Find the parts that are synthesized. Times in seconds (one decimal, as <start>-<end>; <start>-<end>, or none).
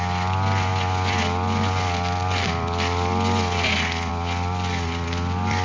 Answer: none